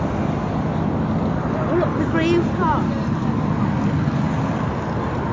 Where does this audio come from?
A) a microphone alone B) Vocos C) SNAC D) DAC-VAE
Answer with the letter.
A